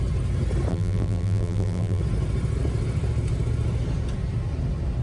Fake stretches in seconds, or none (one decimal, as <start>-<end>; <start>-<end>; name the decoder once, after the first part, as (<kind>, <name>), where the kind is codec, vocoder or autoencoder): 0.7-2.0 (vocoder, BigVGAN v2)